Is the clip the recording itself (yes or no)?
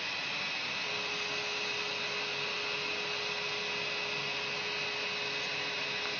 yes